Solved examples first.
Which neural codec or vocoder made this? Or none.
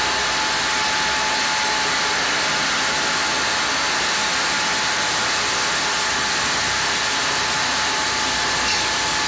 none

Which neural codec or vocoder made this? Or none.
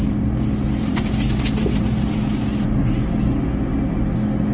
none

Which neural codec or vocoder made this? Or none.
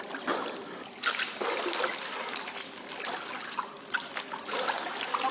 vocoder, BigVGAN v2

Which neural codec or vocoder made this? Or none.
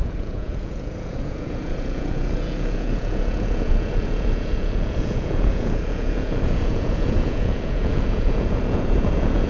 vocoder, Vocos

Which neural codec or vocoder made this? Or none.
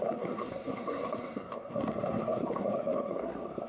codec, SNAC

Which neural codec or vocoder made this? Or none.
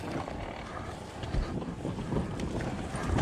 none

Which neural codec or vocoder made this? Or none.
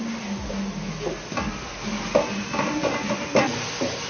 none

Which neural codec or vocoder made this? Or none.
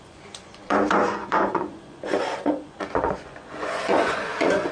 vocoder, Vocos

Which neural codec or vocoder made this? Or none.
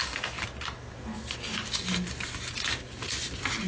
none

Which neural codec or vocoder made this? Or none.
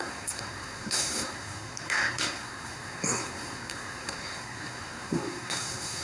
codec, SNAC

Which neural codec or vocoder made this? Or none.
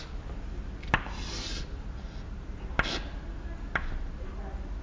none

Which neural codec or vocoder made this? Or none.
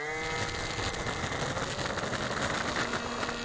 none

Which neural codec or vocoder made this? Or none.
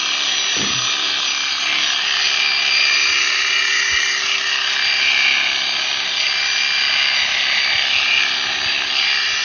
none